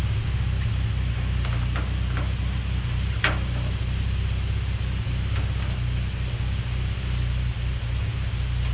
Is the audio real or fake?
real